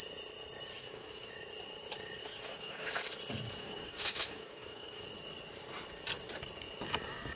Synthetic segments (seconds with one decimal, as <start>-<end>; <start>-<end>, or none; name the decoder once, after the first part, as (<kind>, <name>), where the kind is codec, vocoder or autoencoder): 0.8-1.3 (codec, DAC); 2.2-2.9; 3.6-5.0